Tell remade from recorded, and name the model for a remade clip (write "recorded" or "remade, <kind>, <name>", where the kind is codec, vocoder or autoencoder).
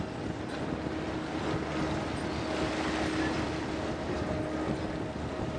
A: recorded